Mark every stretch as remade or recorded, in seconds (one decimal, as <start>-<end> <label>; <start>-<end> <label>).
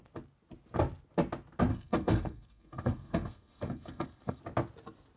0.0-1.7 recorded; 1.7-4.4 remade; 4.4-5.2 recorded